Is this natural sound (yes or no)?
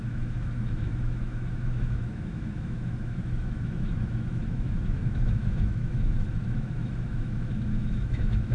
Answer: no